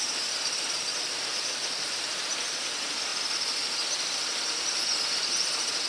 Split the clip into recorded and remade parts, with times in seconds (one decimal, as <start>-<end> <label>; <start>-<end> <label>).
0.0-1.3 recorded; 1.3-2.3 remade; 2.3-5.9 recorded